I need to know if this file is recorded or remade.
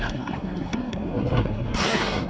remade